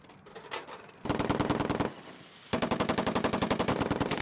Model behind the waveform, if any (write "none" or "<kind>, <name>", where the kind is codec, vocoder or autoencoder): vocoder, BigVGAN v2